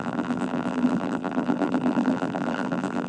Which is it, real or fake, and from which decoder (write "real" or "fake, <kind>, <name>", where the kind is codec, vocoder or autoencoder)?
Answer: fake, vocoder, BigVGAN v2